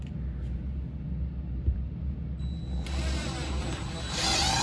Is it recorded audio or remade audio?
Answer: recorded